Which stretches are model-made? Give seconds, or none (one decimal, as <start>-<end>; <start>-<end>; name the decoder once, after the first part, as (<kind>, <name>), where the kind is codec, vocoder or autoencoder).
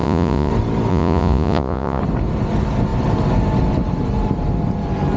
0.0-0.5 (vocoder, Vocos); 0.9-2.0